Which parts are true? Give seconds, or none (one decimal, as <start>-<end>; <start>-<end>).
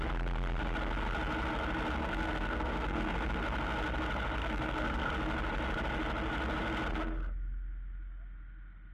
0.0-2.0; 3.2-4.4; 5.1-8.9